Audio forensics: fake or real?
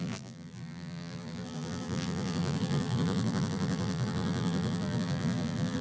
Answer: fake